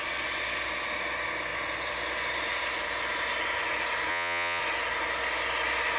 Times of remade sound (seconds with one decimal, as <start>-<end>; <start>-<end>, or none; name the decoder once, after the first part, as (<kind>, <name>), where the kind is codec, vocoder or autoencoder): 4.1-4.6 (vocoder, Vocos)